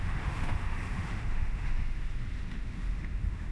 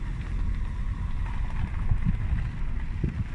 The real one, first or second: second